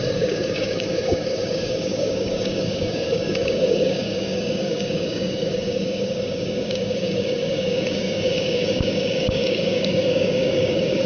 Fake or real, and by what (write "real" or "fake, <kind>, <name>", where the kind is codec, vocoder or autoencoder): fake, codec, DAC